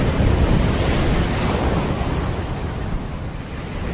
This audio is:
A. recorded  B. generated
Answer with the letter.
A